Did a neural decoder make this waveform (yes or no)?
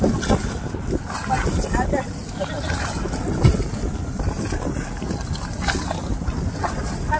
no